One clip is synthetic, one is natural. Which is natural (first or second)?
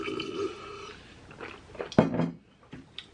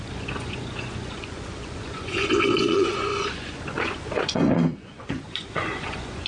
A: first